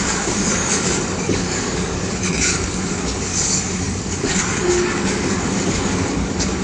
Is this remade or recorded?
remade